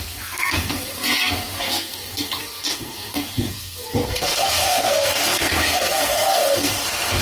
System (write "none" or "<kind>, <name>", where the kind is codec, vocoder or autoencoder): codec, SNAC